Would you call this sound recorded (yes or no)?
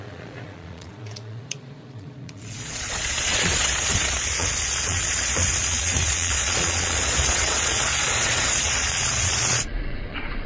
no